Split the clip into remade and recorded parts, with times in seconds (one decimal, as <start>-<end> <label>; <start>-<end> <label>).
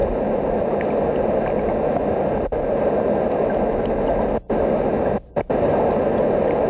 0.0-6.7 recorded